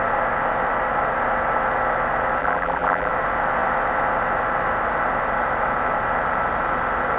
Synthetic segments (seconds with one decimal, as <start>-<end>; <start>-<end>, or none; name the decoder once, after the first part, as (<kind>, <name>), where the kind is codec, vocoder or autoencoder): 2.4-3.1 (vocoder, BigVGAN v2)